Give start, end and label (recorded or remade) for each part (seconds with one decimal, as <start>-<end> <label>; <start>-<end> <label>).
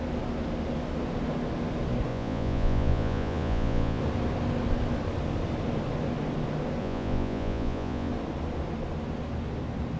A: 0.0-2.1 recorded; 2.1-4.0 remade; 4.0-6.8 recorded; 6.8-8.1 remade; 8.1-10.0 recorded